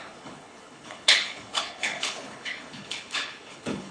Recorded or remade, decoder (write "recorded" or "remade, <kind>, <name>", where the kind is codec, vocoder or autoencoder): remade, codec, HILCodec